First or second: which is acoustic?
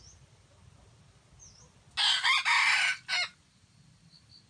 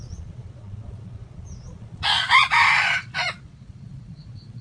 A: first